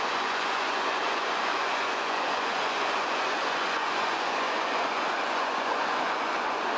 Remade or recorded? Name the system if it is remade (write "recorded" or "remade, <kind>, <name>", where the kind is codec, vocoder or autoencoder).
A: remade, vocoder, Vocos